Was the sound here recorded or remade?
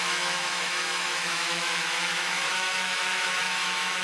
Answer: remade